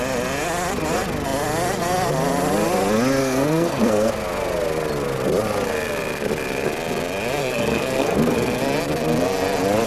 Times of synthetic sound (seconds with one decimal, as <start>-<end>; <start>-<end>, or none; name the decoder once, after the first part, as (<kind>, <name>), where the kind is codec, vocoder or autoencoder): 3.2-4.1 (codec, SNAC); 7.4-8.6